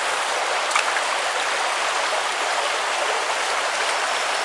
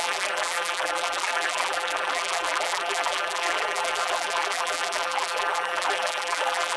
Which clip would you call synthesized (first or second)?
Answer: second